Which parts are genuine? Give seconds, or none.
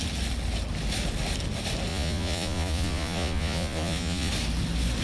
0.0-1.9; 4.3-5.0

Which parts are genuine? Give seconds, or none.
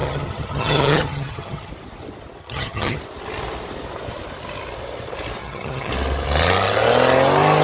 1.7-2.4; 3.0-5.4; 5.9-7.6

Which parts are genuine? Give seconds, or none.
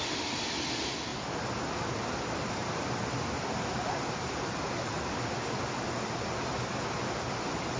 0.0-7.8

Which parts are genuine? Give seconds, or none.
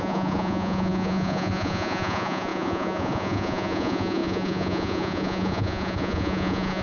none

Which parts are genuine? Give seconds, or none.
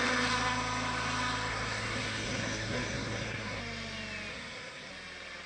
0.0-1.5; 3.6-4.3; 4.9-5.5